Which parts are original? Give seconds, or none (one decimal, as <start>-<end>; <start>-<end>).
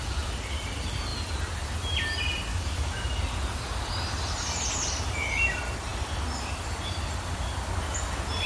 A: 0.0-2.5; 3.2-8.5